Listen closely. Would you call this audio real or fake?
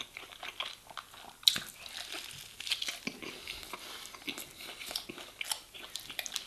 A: real